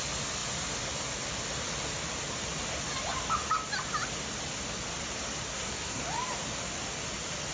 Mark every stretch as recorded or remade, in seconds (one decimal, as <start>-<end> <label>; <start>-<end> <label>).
0.0-5.5 recorded; 5.5-6.0 remade; 6.0-7.5 recorded